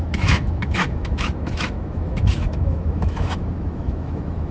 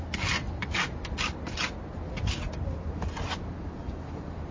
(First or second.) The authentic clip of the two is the second